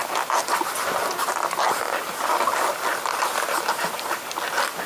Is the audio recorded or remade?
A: recorded